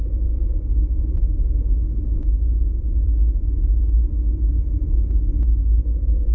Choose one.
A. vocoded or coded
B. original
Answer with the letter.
B